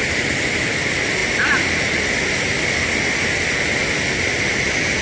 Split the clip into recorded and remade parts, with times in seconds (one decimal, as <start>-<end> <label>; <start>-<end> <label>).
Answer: 0.0-5.0 recorded